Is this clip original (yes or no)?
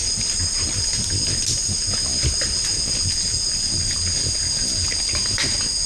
yes